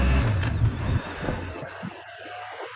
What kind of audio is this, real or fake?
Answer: real